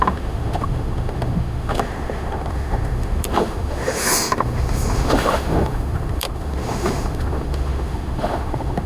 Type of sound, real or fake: fake